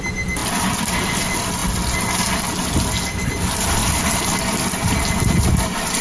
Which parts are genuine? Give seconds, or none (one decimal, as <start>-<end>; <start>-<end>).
0.4-1.2; 1.6-3.4